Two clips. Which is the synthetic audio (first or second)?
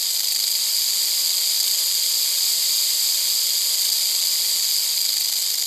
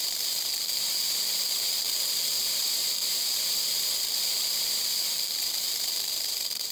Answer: second